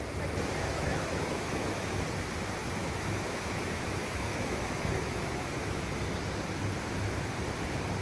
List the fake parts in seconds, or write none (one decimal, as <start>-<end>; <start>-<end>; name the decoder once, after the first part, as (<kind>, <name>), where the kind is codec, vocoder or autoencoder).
0.6-2.0 (autoencoder, DAC-VAE); 2.8-5.9